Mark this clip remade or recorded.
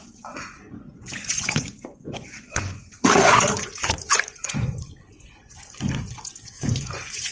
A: remade